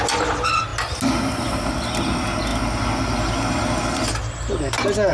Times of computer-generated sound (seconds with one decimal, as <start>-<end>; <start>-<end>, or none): none